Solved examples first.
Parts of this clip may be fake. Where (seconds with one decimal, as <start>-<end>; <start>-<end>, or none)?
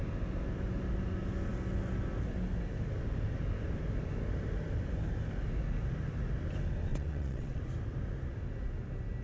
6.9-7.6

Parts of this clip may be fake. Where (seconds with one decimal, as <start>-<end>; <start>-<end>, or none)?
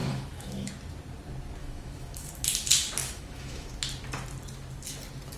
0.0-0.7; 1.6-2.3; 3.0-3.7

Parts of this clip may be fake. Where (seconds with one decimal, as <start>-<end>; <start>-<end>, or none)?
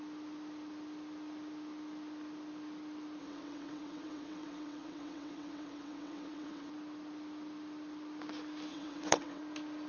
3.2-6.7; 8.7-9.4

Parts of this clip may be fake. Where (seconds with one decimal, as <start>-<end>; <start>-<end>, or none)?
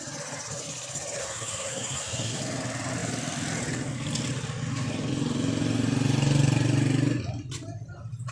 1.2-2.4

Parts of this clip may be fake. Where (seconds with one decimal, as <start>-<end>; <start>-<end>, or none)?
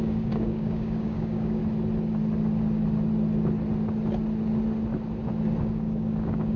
0.0-1.6; 5.6-6.6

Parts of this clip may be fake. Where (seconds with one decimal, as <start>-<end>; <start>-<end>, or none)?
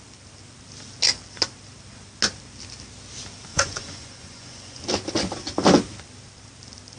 3.5-4.8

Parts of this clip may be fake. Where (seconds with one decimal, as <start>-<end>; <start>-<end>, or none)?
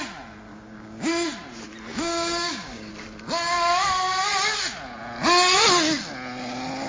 0.5-1.1; 1.9-2.9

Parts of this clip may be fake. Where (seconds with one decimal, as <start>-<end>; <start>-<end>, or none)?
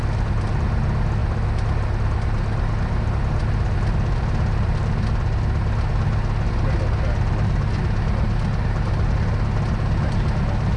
none